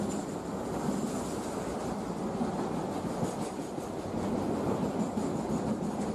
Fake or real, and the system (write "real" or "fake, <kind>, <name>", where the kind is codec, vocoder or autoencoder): real